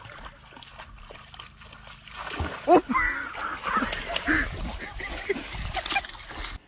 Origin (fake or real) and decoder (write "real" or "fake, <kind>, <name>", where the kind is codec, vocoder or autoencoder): real